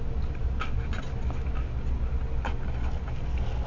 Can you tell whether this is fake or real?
real